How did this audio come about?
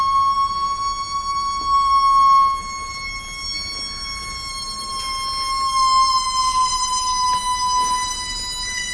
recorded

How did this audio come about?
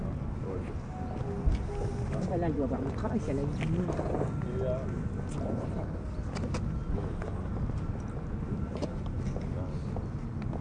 recorded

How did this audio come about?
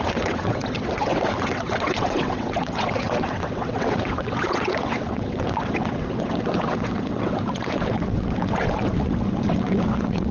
remade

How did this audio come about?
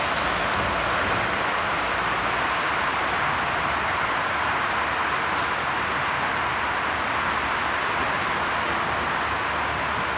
recorded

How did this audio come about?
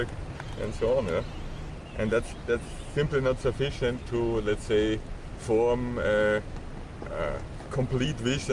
recorded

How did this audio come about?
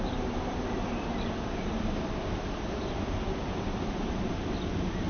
remade